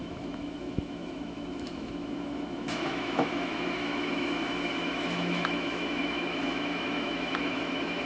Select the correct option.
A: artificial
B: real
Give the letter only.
A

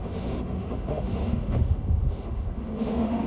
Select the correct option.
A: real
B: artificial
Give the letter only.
B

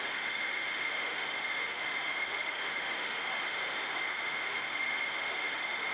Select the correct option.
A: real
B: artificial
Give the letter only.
B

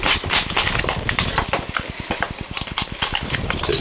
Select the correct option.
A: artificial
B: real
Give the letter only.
B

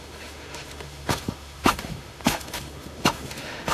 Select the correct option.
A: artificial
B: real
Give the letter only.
A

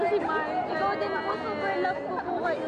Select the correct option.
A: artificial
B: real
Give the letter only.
B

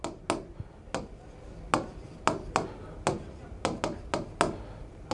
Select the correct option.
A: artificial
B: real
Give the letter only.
B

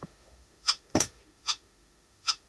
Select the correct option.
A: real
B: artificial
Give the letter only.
B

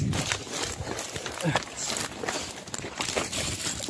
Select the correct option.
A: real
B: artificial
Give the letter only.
A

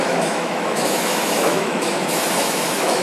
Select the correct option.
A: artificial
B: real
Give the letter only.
A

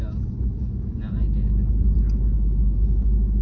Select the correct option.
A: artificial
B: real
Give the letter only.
B